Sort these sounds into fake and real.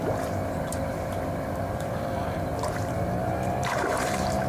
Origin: fake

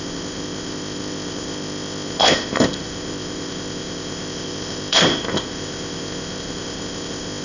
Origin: fake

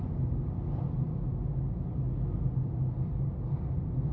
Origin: real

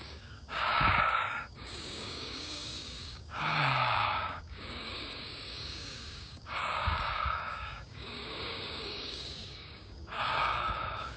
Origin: fake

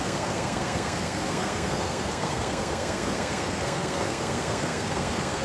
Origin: fake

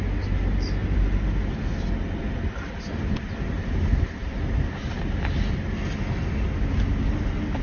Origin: real